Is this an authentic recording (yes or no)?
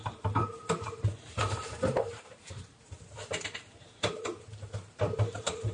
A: no